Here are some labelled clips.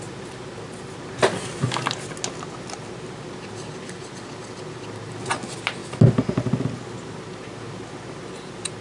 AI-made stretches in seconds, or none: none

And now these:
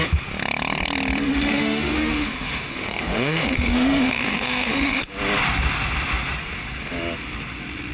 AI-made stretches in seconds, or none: 1.3-5.1 (autoencoder, DAC-VAE)

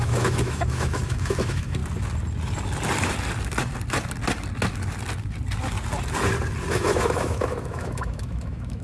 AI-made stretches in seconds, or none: 0.0-1.8 (autoencoder, DAC-VAE); 6.7-8.8